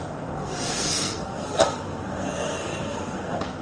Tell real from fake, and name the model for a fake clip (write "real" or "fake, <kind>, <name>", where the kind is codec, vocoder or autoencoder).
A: fake, codec, SNAC